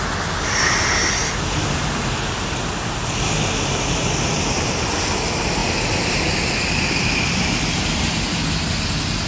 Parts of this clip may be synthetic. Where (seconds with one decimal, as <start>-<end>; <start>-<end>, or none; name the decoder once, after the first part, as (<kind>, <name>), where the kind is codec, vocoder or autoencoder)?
5.6-7.6 (vocoder, BigVGAN v2)

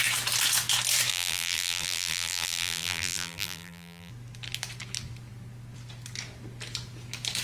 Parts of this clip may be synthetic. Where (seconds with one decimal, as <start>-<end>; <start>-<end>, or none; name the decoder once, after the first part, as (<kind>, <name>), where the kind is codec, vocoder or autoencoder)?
1.1-4.1 (vocoder, BigVGAN v2)